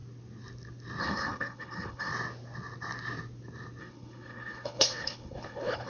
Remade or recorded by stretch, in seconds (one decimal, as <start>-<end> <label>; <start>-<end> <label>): 0.0-1.0 recorded; 1.0-2.1 remade; 2.1-3.8 recorded; 3.8-5.9 remade